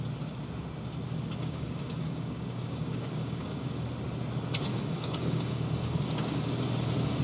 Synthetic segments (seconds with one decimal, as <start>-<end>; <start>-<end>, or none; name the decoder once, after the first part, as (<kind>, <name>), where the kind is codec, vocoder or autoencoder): 1.4-3.7 (codec, DAC); 4.7-6.4